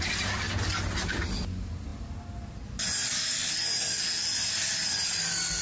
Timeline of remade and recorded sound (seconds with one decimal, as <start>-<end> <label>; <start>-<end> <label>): 0.0-5.6 recorded

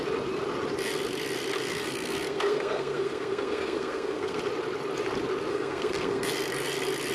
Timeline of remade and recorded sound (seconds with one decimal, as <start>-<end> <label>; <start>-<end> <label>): 0.0-1.7 recorded; 1.7-4.4 remade; 4.4-5.5 recorded; 5.5-6.3 remade; 6.3-7.1 recorded

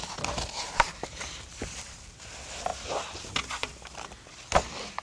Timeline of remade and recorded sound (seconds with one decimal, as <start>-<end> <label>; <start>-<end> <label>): 0.0-2.1 remade; 2.1-3.6 recorded; 3.6-5.0 remade

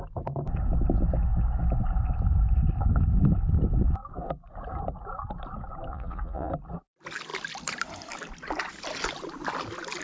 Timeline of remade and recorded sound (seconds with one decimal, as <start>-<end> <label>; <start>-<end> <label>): 0.0-5.9 recorded; 5.9-6.5 remade; 6.5-10.0 recorded

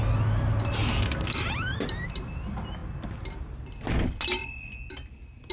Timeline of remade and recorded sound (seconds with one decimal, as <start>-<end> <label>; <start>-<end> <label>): 0.0-5.5 recorded

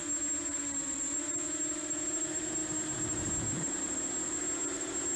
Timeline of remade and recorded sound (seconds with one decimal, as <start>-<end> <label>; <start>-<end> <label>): 0.0-5.2 recorded

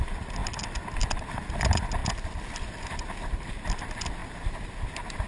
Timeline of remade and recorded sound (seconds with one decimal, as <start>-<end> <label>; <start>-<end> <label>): 0.0-5.3 recorded

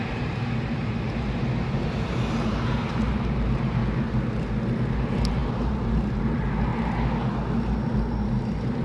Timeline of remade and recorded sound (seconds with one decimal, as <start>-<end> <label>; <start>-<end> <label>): 0.0-3.8 remade; 3.8-4.9 recorded; 4.9-6.7 remade; 6.7-8.3 recorded; 8.3-8.8 remade